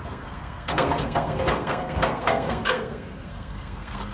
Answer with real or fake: fake